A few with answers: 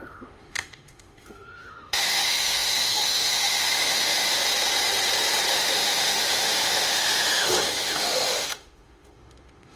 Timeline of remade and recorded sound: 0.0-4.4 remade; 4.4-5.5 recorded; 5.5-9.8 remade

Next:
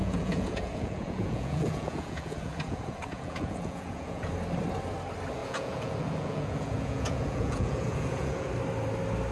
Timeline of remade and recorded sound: 0.0-4.3 remade; 4.3-5.4 recorded; 5.4-8.5 remade; 8.5-9.3 recorded

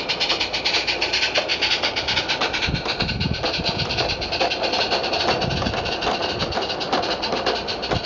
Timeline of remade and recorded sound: 0.0-8.1 recorded